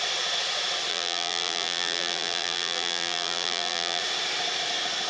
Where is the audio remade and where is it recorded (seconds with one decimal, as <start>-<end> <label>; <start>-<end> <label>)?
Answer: 0.0-0.9 recorded; 0.9-4.0 remade; 4.0-5.1 recorded